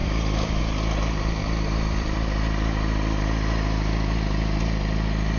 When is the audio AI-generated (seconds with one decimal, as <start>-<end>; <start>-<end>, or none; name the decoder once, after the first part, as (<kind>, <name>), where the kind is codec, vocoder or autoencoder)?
0.0-0.6 (vocoder, BigVGAN v2); 1.4-4.6